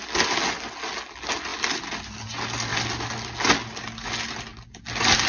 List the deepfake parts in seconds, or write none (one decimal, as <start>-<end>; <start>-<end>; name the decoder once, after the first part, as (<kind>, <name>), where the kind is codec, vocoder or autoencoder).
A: 1.5-2.2 (vocoder, BigVGAN v2); 4.5-5.3